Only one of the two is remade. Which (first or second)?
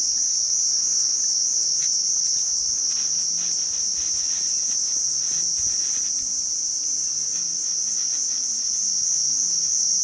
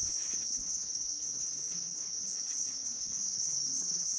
second